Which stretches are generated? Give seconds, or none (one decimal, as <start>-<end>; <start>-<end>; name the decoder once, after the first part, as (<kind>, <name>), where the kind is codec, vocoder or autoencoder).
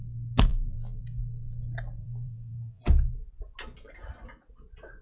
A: 0.5-1.0 (vocoder, BigVGAN v2); 2.0-2.8